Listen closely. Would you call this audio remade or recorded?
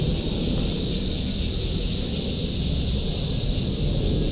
recorded